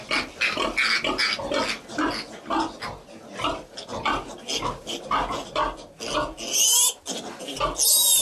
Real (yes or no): yes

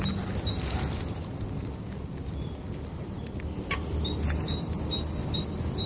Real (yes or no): yes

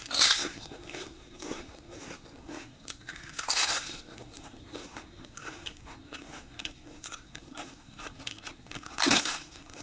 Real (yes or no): no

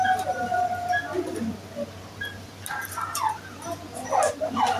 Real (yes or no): yes